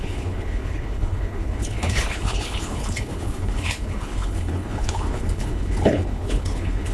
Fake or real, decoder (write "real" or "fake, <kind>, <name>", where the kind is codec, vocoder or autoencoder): fake, codec, HILCodec